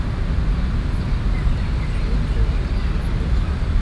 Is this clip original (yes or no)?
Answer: yes